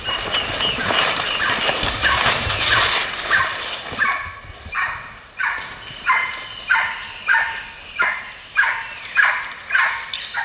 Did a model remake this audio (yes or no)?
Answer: no